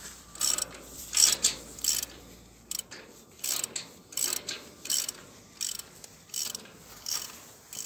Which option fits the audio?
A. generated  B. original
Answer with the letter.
A